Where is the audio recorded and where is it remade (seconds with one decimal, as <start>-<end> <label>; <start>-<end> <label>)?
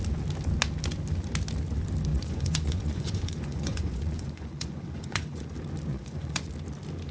0.0-2.1 recorded; 2.1-5.5 remade; 5.5-5.9 recorded; 5.9-6.5 remade; 6.5-7.1 recorded